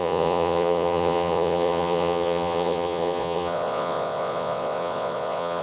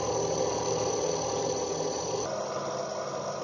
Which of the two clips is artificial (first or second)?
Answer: first